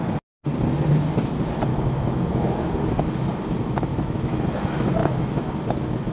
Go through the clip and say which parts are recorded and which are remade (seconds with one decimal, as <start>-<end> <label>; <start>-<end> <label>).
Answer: 0.0-1.7 recorded; 1.7-2.7 remade; 2.7-3.9 recorded; 3.9-4.5 remade; 4.5-5.0 recorded; 5.0-5.5 remade; 5.5-6.1 recorded